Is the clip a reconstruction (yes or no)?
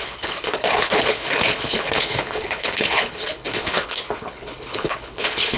yes